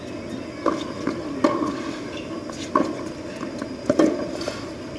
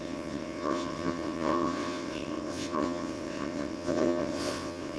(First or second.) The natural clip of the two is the first